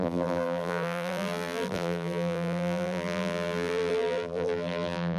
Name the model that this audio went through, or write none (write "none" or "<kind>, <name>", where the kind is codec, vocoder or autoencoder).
vocoder, BigVGAN v2